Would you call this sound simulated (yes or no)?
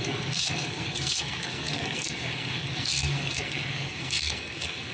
yes